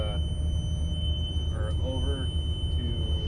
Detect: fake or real real